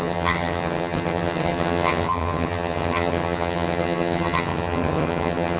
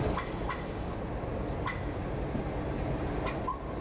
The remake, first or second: first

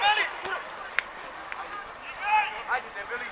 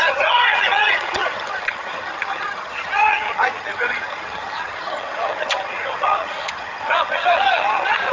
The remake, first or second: second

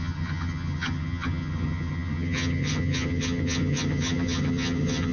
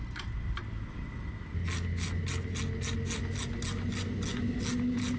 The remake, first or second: first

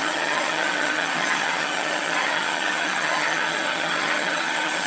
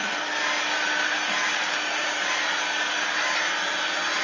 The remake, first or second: first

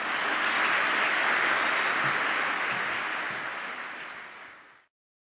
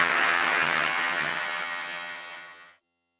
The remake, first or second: second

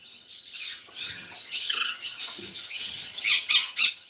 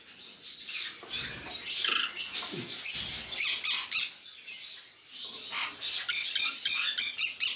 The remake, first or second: first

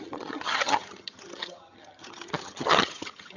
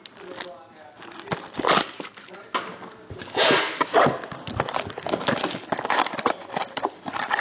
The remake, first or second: first